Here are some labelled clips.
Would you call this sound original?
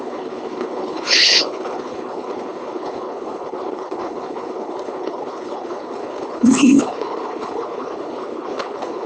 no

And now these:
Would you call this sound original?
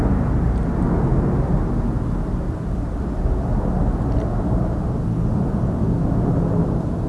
yes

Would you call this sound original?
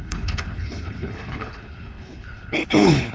no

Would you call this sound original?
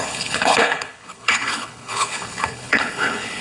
no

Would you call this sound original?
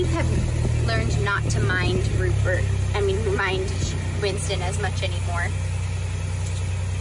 yes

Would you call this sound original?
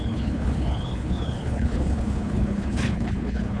no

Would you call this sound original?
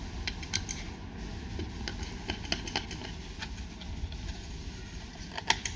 yes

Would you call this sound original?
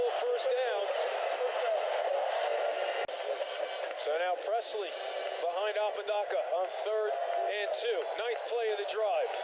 yes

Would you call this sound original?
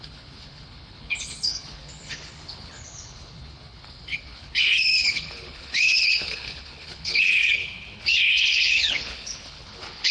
no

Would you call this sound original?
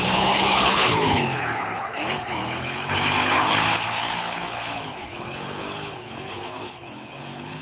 no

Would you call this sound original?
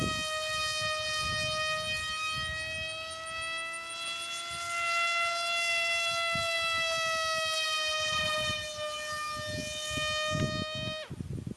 yes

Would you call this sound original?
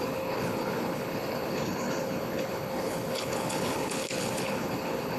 no